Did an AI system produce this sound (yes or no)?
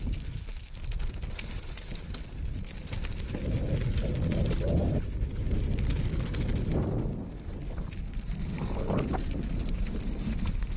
no